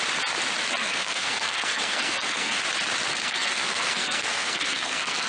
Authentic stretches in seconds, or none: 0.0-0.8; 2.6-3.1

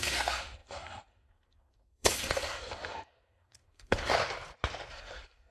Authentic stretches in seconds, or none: 4.1-4.9

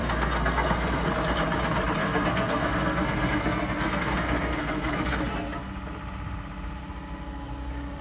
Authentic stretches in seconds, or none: 1.1-2.0; 5.1-8.0

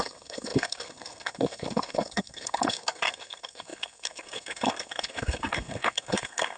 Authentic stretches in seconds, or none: none